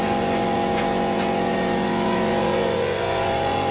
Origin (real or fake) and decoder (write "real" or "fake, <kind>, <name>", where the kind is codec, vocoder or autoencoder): fake, vocoder, Vocos